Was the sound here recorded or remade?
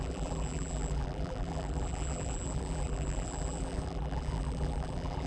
remade